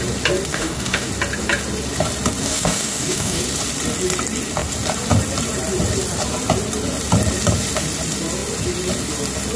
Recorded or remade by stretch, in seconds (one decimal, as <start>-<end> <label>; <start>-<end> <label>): 0.0-0.5 recorded; 0.5-1.1 remade; 1.1-2.4 recorded; 2.4-3.4 remade; 3.4-9.6 recorded